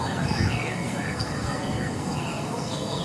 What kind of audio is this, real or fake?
fake